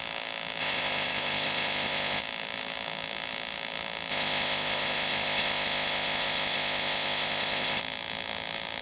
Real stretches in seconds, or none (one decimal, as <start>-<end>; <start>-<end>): 0.0-0.6; 2.2-4.1; 7.8-8.8